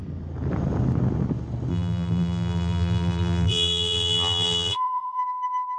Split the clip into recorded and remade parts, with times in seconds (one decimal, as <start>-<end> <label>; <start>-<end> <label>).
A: 0.0-1.7 recorded; 1.7-5.2 remade; 5.2-5.8 recorded

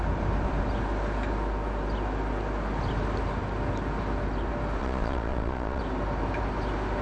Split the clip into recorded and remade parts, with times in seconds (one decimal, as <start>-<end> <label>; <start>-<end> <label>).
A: 0.0-4.8 recorded; 4.8-5.8 remade; 5.8-7.0 recorded

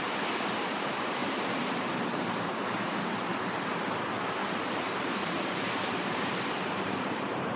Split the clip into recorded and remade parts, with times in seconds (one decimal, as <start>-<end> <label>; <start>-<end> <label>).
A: 0.0-1.2 recorded; 1.2-1.9 remade; 1.9-3.3 recorded; 3.3-3.8 remade; 3.8-4.4 recorded; 4.4-7.6 remade

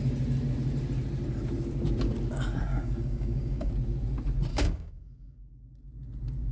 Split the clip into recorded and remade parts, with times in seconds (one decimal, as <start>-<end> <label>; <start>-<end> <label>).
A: 0.0-2.7 recorded; 2.7-3.7 remade; 3.7-4.5 recorded; 4.5-5.5 remade; 5.5-6.5 recorded

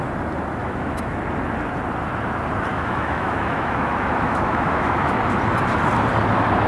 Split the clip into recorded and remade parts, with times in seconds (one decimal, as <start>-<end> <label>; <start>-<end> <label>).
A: 0.0-0.6 recorded; 0.6-1.2 remade; 1.2-2.7 recorded; 2.7-5.2 remade; 5.2-6.7 recorded

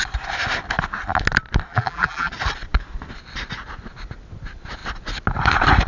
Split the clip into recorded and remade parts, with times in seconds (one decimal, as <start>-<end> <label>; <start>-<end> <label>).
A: 0.0-1.7 recorded; 1.7-2.3 remade; 2.3-5.9 recorded